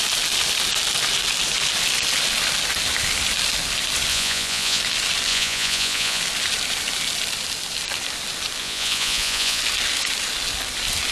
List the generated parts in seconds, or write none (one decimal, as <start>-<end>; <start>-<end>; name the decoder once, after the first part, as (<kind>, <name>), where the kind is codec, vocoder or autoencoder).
4.1-4.8 (vocoder, Vocos); 5.3-6.2; 8.6-9.6